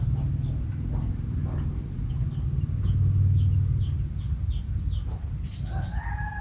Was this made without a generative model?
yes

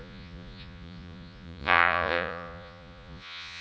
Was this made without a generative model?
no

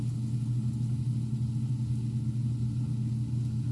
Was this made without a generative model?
yes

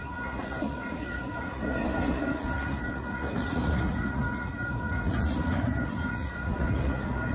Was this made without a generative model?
no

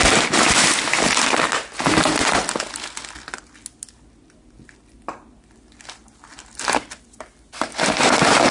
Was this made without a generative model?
yes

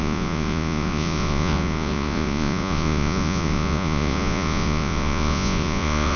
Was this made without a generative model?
no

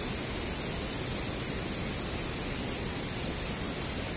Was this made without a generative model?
yes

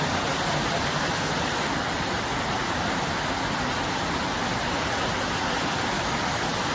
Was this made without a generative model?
yes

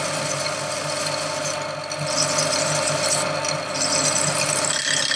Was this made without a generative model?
yes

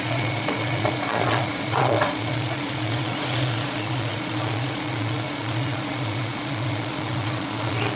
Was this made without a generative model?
no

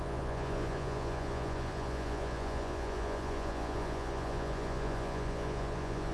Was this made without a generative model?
no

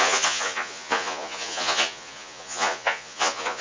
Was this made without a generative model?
no